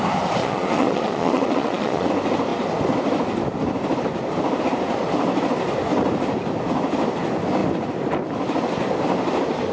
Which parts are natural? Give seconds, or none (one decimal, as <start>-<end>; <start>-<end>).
0.0-0.4; 2.1-9.7